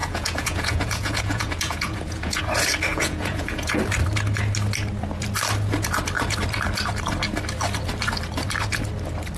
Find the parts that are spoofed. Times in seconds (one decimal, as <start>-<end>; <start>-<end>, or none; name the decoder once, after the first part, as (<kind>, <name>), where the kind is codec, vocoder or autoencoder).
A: 0.0-2.4 (vocoder, Vocos); 2.9-3.8

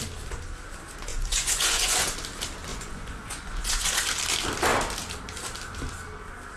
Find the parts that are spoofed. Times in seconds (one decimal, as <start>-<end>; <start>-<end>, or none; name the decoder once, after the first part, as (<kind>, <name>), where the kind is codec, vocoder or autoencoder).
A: 1.1-2.1 (vocoder, Vocos); 2.7-4.0

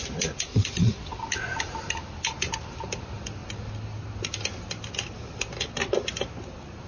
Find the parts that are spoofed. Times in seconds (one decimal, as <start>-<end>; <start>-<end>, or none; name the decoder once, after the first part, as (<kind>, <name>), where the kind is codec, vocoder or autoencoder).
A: 0.5-1.2 (vocoder, Vocos)

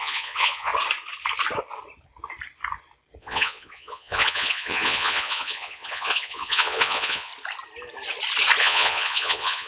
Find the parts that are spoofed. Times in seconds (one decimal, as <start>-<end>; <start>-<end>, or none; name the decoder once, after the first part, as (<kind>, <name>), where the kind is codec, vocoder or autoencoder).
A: 0.0-0.7 (vocoder, Vocos); 3.2-7.3; 8.6-9.7

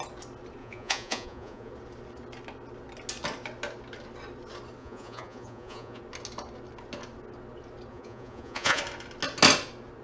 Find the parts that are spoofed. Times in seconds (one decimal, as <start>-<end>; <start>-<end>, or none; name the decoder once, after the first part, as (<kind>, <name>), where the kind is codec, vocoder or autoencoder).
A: 0.6-1.7 (vocoder, Vocos); 4.8-6.0; 7.9-8.8

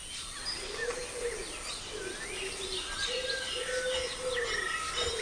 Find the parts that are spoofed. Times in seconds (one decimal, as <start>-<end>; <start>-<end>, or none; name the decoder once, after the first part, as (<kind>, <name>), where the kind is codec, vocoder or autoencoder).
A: none

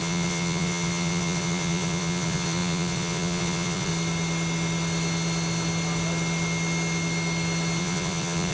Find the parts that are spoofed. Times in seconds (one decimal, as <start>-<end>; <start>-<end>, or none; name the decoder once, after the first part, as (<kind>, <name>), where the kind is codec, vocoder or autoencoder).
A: 0.0-3.9 (vocoder, Vocos); 7.8-8.5

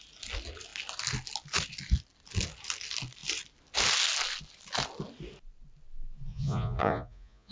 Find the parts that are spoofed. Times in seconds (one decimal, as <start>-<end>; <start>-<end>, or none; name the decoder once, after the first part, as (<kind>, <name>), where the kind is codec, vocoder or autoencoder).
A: 6.3-7.5 (vocoder, Vocos)